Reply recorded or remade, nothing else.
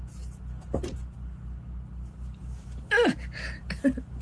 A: recorded